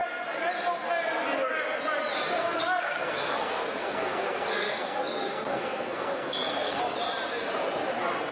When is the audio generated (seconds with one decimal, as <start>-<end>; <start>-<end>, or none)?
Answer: 2.4-6.8